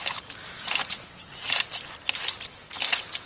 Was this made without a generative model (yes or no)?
yes